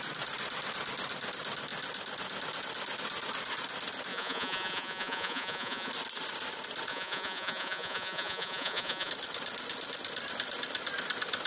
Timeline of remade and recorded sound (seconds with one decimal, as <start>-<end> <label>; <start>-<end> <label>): 0.0-4.1 recorded; 4.1-5.9 remade; 5.9-6.9 recorded; 6.9-9.1 remade; 9.1-11.5 recorded